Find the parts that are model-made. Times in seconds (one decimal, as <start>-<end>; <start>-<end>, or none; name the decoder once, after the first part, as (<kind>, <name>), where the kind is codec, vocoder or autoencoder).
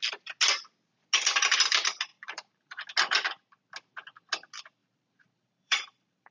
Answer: 2.1-2.9 (vocoder, BigVGAN v2); 4.8-6.3